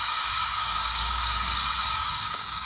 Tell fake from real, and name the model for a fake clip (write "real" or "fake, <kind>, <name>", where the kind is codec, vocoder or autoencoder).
fake, codec, DAC